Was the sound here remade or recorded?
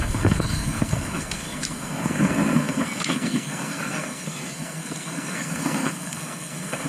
remade